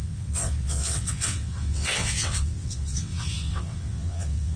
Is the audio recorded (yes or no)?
no